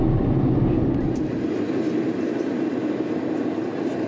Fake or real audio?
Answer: real